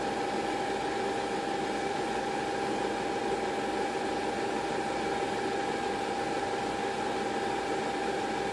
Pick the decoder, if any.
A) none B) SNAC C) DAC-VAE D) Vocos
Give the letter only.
A